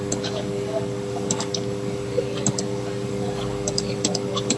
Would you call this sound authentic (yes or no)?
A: no